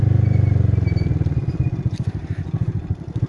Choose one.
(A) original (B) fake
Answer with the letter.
A